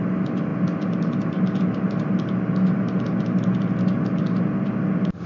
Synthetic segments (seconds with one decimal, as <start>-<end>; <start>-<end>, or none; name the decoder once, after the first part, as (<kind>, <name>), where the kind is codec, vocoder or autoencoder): none